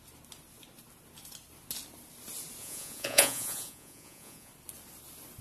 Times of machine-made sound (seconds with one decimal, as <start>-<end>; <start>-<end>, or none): 2.6-4.5